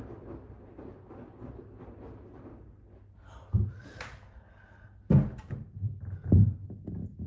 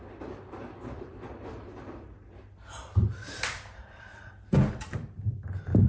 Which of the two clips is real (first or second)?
first